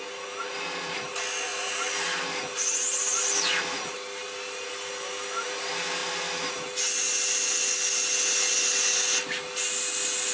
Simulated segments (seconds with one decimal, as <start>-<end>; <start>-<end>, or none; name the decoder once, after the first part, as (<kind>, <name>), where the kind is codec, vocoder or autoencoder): none